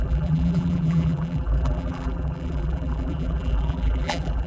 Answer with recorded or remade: remade